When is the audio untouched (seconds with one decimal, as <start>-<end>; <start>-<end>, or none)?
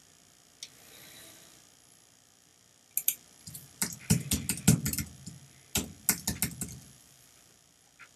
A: 0.0-8.2